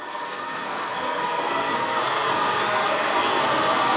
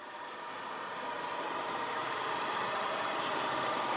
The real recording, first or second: second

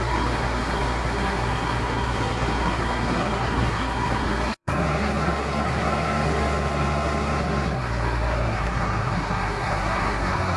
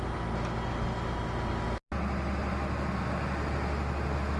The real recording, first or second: second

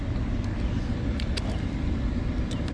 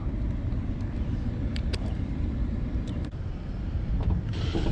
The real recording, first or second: first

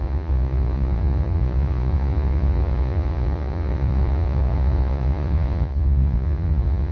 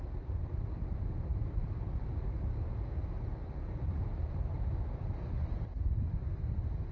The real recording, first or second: second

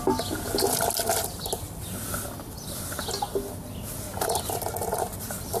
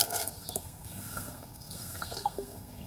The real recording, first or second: first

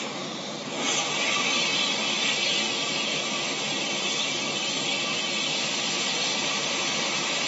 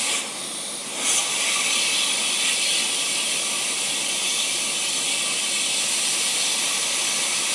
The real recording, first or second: first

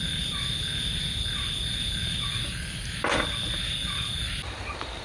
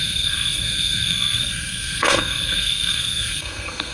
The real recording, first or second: first